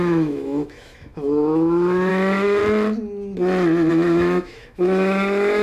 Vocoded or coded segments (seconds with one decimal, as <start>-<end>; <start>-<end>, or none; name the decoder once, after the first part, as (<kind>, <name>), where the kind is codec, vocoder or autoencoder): 0.0-2.6 (autoencoder, DAC-VAE); 3.9-5.6